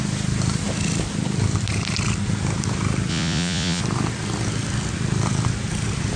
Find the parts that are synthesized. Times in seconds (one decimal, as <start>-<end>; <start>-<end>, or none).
3.1-3.8